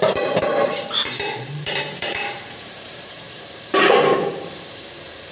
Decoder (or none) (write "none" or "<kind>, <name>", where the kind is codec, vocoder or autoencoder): vocoder, BigVGAN v2